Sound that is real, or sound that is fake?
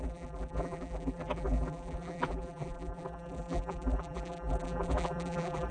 fake